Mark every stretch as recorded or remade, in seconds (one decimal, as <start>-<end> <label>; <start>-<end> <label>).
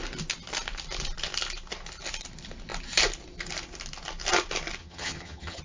0.0-4.8 recorded; 4.8-5.6 remade